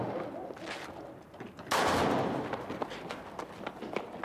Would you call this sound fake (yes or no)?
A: no